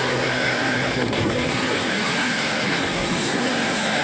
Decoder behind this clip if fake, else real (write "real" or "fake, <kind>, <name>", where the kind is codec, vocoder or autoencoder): fake, codec, SNAC